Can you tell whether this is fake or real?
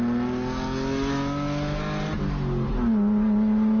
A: real